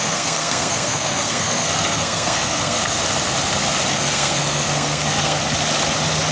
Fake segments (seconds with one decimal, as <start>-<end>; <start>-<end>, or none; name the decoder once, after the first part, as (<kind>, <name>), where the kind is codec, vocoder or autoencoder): 0.0-3.0 (codec, SNAC); 3.9-5.4